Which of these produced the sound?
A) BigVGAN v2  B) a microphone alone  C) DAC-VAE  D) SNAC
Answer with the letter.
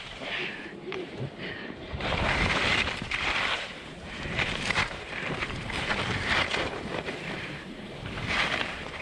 A